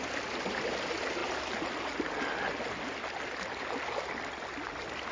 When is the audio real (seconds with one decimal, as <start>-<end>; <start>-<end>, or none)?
0.0-5.1